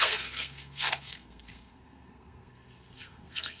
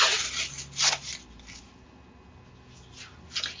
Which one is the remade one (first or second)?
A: first